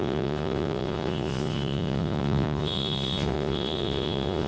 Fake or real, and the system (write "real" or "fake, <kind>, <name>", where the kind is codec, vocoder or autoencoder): fake, vocoder, Vocos